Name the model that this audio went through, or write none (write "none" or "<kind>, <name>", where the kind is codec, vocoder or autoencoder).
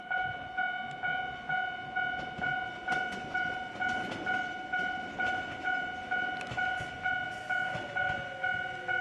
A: none